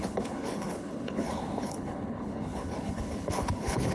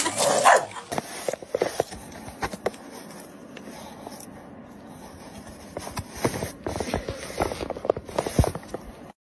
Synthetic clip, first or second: first